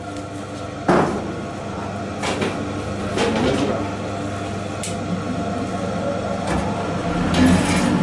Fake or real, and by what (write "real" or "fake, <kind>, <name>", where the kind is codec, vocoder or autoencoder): real